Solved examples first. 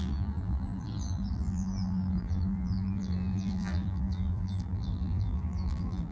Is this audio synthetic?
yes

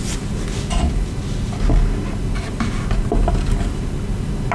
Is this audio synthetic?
no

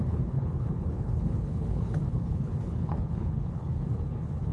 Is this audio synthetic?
yes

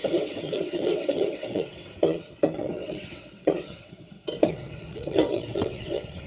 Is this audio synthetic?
yes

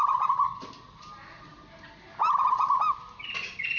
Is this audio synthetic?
no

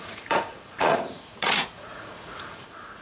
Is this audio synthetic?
yes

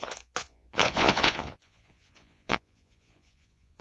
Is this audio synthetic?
yes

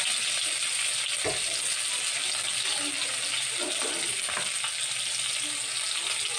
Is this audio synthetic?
no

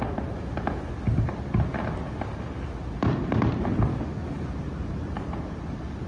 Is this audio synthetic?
no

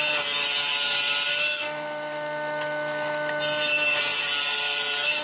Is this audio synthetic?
no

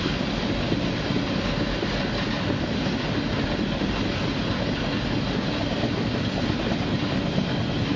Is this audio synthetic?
no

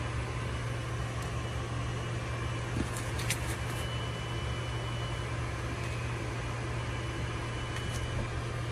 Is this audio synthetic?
no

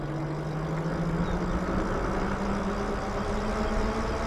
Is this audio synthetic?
no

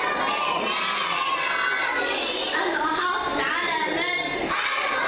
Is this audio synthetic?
yes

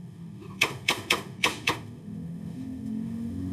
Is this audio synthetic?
yes